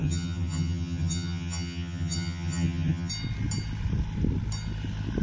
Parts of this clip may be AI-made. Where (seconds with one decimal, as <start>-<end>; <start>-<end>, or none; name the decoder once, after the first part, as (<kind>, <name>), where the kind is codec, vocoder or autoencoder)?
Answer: 0.0-3.1 (vocoder, HiFi-GAN)